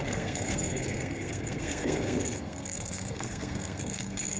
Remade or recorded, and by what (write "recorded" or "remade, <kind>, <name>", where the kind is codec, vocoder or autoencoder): remade, codec, SNAC